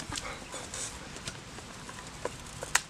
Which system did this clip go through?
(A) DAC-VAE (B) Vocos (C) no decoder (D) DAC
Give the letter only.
C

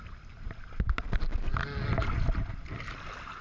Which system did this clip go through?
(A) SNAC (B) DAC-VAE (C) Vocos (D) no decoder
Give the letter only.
D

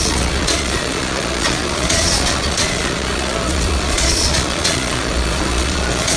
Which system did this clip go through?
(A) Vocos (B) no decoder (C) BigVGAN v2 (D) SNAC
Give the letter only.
A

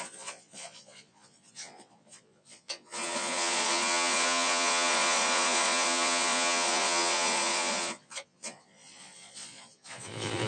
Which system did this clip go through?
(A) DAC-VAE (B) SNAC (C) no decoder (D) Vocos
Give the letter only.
D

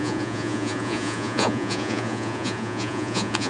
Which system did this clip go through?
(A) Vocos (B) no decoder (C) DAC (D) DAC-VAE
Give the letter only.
A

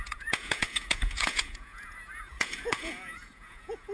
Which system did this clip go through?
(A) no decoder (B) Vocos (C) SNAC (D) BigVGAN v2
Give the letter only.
B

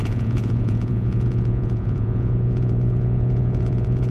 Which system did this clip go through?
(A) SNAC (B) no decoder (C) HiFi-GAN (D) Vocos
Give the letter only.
D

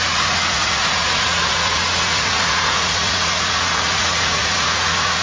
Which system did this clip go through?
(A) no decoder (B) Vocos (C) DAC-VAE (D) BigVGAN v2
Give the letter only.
B